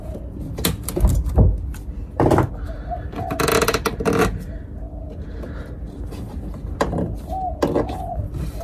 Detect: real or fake real